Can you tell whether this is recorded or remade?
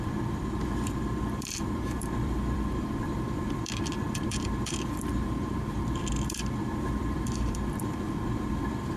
remade